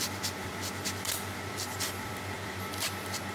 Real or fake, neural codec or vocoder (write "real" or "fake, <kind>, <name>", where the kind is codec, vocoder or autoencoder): fake, vocoder, BigVGAN v2